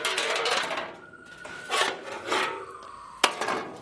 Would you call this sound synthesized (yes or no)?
no